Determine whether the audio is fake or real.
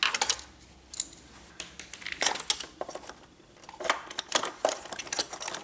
real